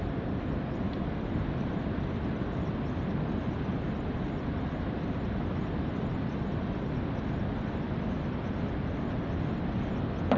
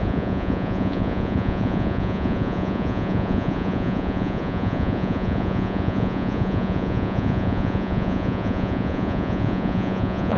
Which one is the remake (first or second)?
second